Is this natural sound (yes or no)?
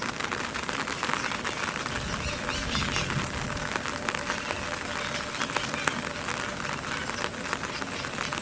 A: yes